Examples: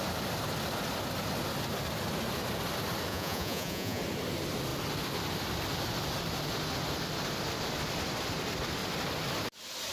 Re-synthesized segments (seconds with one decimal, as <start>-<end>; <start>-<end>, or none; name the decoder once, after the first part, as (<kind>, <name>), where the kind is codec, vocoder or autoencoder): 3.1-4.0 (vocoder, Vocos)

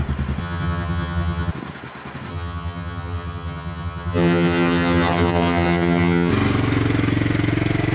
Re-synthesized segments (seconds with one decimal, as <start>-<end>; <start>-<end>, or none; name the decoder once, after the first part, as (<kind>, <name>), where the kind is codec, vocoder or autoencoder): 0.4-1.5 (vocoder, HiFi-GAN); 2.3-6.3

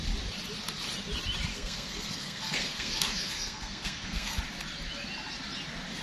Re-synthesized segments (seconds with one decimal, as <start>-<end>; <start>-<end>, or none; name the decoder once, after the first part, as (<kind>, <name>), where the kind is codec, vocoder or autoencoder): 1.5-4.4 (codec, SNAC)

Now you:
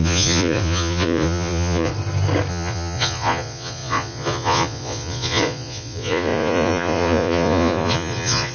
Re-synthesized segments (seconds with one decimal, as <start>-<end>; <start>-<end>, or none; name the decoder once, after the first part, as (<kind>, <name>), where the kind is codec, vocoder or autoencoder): 0.0-1.9 (vocoder, Vocos); 2.5-8.5

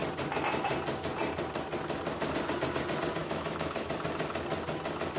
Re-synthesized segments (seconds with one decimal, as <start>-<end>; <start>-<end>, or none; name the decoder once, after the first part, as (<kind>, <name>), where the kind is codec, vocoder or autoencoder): 3.2-3.9 (autoencoder, DAC-VAE)